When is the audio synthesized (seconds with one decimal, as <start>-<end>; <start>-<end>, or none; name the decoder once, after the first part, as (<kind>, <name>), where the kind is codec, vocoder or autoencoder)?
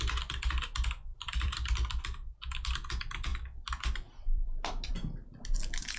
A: 1.1-2.0 (vocoder, BigVGAN v2); 3.3-4.9